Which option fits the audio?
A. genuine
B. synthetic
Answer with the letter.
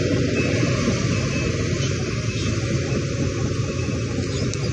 A